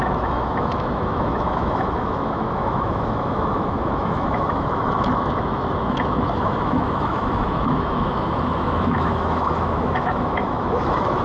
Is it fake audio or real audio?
fake